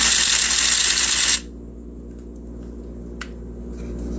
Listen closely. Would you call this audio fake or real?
real